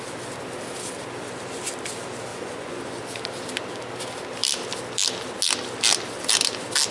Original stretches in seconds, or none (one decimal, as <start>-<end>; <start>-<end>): 0.0-2.3; 3.0-6.9